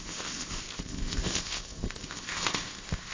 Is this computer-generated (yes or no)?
yes